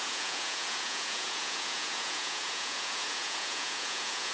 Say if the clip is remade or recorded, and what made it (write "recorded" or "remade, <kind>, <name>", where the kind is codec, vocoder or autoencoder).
remade, vocoder, Vocos